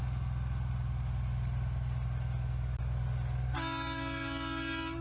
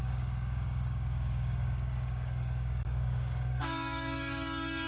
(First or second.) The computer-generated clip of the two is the second